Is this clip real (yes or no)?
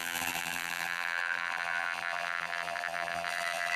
no